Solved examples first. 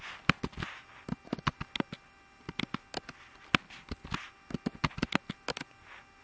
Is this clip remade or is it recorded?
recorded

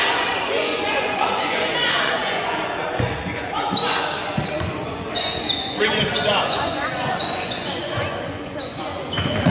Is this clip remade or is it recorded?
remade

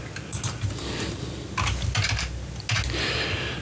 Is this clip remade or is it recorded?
recorded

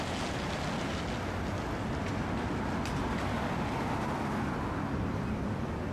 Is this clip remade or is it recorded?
recorded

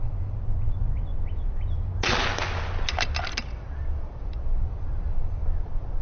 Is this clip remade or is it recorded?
recorded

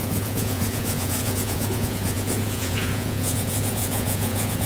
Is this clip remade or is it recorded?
remade